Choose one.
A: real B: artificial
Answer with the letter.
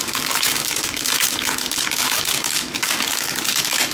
B